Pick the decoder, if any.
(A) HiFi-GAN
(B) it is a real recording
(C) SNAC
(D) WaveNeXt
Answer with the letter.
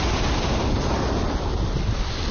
B